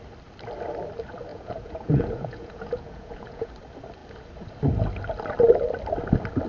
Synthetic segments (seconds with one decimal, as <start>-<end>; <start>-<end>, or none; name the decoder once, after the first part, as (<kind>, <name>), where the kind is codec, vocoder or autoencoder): 1.3-3.5 (vocoder, Vocos)